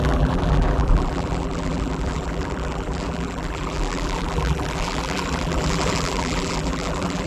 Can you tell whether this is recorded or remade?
remade